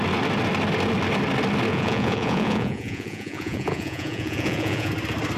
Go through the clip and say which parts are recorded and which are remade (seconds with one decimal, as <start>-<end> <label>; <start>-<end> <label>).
0.0-1.7 recorded; 1.7-4.9 remade; 4.9-5.4 recorded